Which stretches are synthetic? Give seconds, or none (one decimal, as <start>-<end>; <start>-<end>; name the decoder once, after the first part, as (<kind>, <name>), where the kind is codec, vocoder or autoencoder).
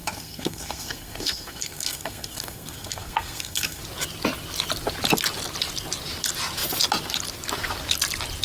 0.0-3.8 (codec, SNAC)